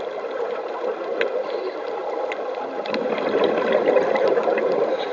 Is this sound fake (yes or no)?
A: no